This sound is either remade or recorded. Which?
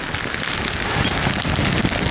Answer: recorded